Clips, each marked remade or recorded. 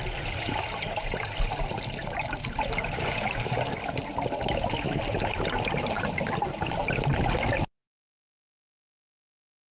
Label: recorded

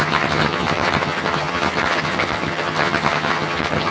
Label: remade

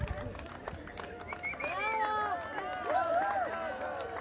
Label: recorded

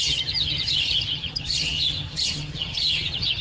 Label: remade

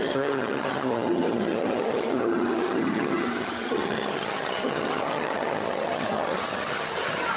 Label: remade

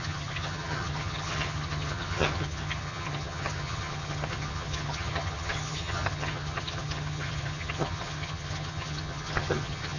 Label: remade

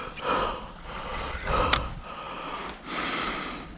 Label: recorded